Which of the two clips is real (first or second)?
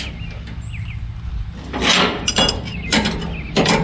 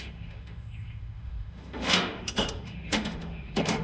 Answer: first